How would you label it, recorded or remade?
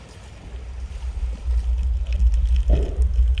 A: recorded